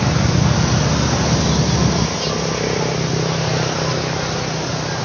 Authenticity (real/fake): fake